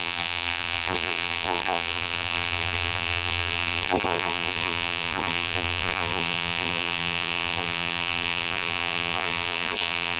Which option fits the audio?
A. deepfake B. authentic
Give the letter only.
A